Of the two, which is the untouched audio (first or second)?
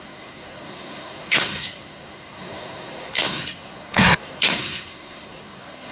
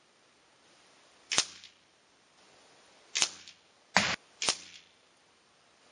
second